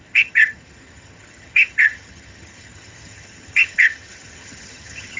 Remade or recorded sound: remade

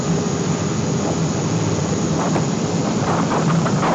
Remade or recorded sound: remade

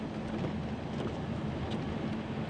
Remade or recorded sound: recorded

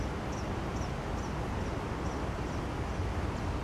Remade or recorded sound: recorded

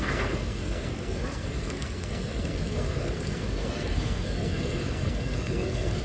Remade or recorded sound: remade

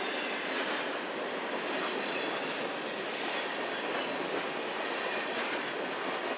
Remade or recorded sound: recorded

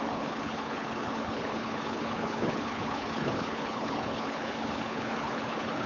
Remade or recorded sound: remade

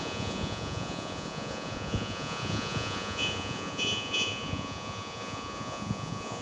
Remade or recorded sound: remade